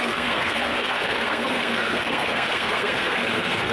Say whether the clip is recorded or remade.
remade